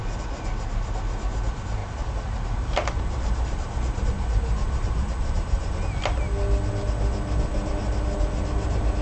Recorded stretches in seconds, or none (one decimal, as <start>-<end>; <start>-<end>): 0.0-1.8; 5.7-9.0